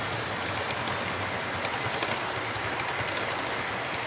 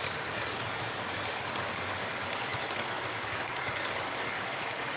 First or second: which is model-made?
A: second